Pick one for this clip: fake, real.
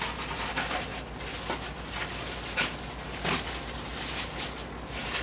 real